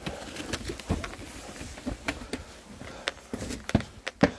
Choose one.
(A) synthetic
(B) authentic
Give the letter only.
B